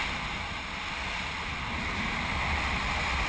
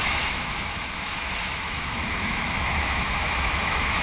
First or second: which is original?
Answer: first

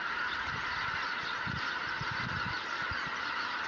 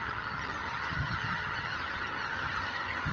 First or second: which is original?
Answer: first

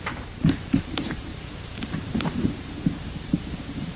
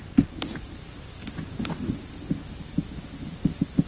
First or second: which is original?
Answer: second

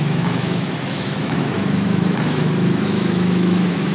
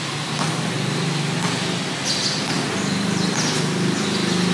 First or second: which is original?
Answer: second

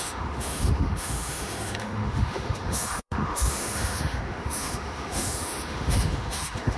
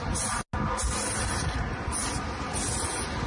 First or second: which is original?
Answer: second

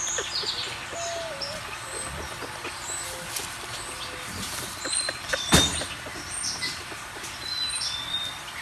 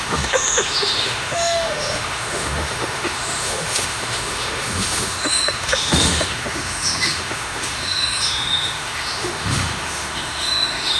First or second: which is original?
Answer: first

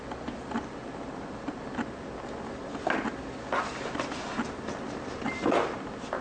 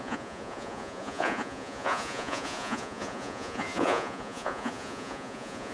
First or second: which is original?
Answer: first